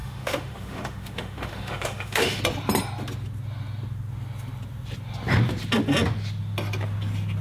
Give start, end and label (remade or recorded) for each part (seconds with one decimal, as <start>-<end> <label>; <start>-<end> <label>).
0.0-2.4 remade; 2.4-7.4 recorded